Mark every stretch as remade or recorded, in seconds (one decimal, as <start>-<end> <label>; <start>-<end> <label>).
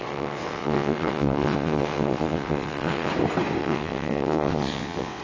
0.0-3.1 remade; 3.1-3.6 recorded; 3.6-5.2 remade